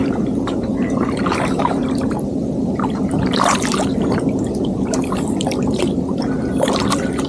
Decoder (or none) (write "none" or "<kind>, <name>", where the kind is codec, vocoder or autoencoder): vocoder, BigVGAN v2